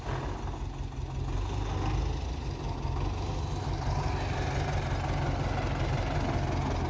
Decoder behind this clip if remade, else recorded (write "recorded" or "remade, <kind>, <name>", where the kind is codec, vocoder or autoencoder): recorded